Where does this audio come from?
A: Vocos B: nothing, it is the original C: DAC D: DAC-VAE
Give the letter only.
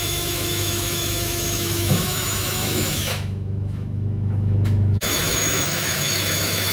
D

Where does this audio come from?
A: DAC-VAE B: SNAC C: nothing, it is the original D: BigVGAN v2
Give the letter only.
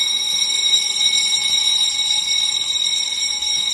C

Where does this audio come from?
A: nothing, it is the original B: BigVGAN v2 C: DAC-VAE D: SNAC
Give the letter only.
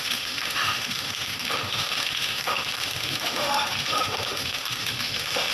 C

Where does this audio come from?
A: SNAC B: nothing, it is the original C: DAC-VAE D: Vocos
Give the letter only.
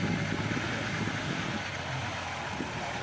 B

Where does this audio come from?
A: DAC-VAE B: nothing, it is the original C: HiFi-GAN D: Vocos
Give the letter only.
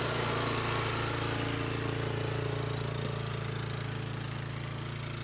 B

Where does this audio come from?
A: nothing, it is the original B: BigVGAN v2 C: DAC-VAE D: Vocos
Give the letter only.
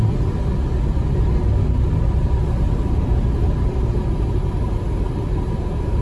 A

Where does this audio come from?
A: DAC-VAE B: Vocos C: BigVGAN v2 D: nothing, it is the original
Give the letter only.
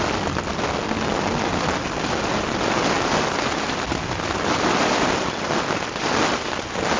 D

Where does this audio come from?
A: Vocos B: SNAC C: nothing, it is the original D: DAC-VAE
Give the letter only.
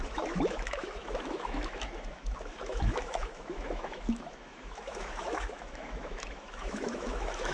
D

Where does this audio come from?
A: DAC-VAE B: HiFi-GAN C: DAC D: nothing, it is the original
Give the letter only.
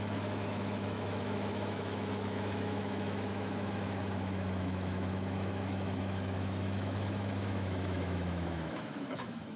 A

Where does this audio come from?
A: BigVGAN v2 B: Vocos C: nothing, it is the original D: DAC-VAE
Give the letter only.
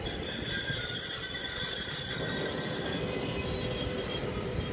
C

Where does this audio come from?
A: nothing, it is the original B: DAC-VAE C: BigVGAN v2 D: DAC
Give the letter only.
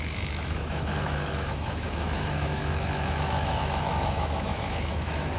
B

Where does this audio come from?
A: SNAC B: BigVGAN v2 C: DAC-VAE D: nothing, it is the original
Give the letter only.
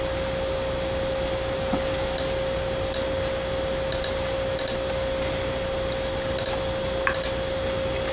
D